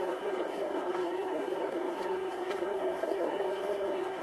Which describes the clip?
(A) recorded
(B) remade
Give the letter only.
B